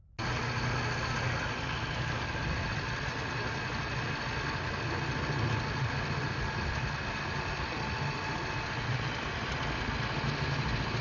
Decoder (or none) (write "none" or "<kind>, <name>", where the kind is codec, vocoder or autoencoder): none